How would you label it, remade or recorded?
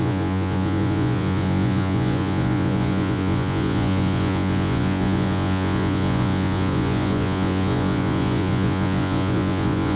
remade